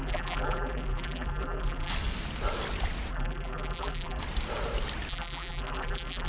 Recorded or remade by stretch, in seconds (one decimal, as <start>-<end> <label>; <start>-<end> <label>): 0.0-1.9 remade; 1.9-3.1 recorded; 3.1-4.2 remade; 4.2-5.1 recorded; 5.1-6.3 remade